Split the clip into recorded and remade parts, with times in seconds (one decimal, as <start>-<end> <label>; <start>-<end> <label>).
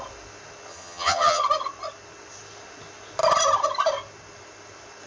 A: 0.0-0.7 recorded; 0.7-1.4 remade; 1.4-5.1 recorded